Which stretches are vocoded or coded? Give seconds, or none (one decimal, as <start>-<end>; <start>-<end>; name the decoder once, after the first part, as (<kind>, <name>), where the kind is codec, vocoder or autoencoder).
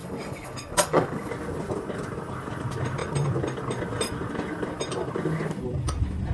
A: 0.0-1.3 (codec, DAC)